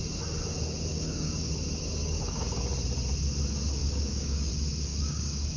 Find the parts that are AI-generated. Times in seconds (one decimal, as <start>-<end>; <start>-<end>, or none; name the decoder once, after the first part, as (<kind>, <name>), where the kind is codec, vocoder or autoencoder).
0.9-1.5 (codec, DAC); 2.0-2.6; 3.8-4.5; 4.9-5.6